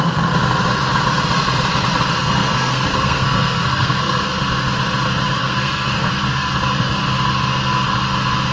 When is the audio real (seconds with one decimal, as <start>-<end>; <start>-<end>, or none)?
0.0-2.2; 4.2-5.4; 6.1-8.5